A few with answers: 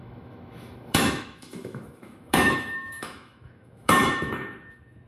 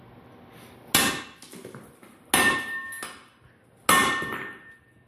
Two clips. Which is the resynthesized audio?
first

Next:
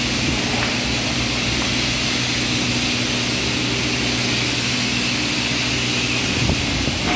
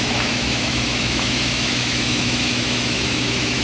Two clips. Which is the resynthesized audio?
second